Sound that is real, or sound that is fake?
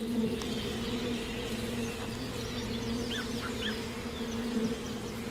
real